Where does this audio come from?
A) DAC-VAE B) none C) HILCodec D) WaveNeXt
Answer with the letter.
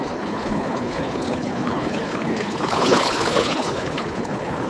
C